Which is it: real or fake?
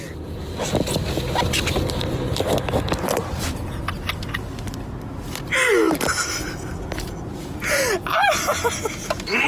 real